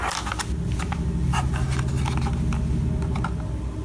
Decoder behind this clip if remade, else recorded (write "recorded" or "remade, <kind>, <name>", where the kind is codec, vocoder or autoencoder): recorded